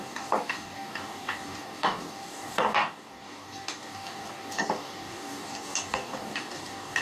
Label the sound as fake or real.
fake